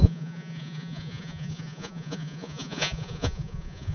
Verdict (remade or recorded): remade